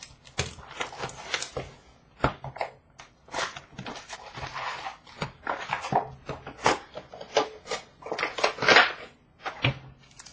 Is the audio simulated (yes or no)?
no